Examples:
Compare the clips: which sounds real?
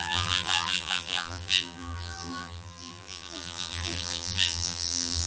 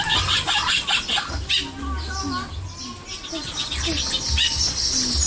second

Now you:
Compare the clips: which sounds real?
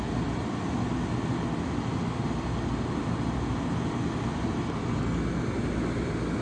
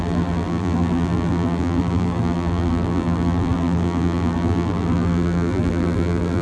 first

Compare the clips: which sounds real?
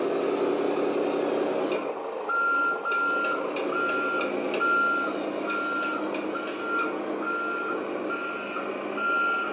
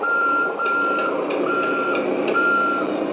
first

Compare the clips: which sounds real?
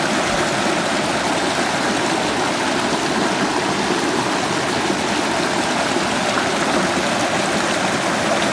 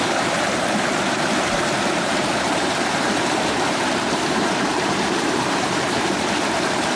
first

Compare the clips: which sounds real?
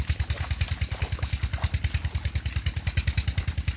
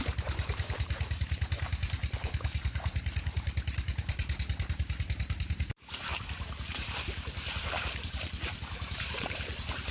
first